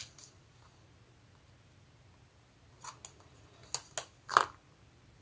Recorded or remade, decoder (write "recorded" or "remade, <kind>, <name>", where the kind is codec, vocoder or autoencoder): recorded